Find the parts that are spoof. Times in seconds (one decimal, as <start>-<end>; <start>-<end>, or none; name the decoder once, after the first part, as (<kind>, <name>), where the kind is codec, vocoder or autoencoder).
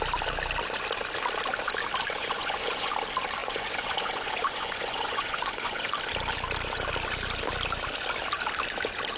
2.2-2.9 (vocoder, Vocos); 3.4-5.9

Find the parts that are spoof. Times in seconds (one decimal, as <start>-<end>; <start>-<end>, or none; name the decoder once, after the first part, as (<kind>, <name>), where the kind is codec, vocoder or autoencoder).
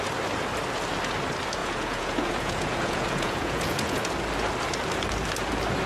1.6-4.0 (vocoder, Vocos)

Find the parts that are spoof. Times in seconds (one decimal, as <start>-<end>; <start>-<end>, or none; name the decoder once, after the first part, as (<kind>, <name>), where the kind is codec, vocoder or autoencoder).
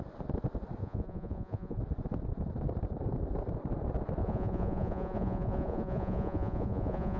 0.8-1.8 (vocoder, Vocos); 4.2-7.2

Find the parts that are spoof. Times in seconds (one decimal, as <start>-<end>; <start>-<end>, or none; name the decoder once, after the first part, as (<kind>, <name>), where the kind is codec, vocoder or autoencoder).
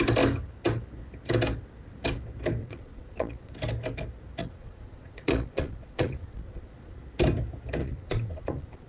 2.6-3.5 (vocoder, Vocos); 4.4-7.0; 7.8-8.9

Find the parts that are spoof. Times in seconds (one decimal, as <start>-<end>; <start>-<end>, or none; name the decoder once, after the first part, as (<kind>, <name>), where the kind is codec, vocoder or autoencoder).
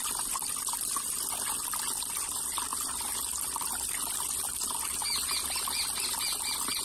none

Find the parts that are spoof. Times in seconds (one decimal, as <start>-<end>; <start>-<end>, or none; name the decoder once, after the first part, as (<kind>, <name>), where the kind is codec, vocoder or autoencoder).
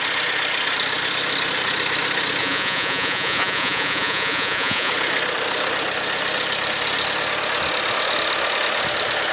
2.4-4.9 (vocoder, Vocos)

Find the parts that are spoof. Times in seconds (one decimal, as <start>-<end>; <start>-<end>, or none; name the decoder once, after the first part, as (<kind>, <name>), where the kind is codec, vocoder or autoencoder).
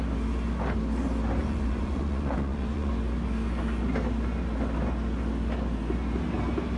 1.4-2.9 (vocoder, Vocos)